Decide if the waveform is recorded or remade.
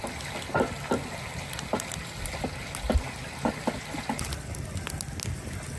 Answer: recorded